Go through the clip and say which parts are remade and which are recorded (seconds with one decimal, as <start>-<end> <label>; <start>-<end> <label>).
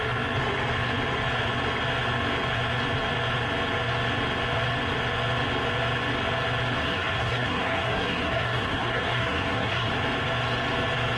0.0-6.8 recorded; 6.8-9.9 remade; 9.9-11.2 recorded